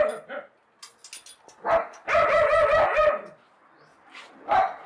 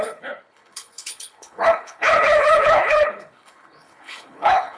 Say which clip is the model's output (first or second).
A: second